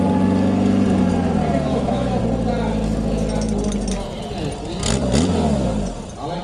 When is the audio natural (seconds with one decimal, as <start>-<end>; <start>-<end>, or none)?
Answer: 0.0-1.7; 2.2-6.4